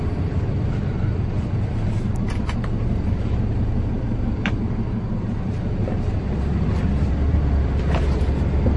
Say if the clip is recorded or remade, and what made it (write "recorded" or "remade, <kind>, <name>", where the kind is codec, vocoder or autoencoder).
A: remade, vocoder, BigVGAN v2